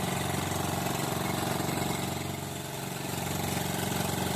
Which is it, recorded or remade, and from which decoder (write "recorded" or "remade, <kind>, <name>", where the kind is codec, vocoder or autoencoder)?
recorded